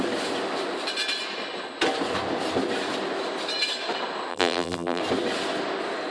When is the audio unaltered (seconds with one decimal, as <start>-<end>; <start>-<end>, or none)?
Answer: 0.0-4.3; 5.0-6.1